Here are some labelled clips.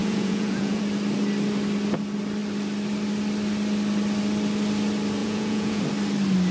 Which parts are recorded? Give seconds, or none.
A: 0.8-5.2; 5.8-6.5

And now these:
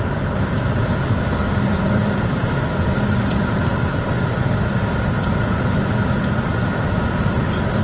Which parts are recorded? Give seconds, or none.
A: 0.0-7.8

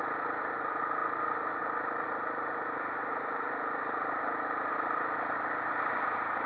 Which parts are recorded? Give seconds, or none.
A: 0.0-6.5

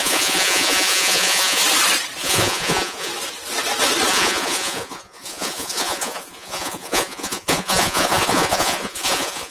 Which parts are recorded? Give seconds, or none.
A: 1.6-2.2; 3.1-4.1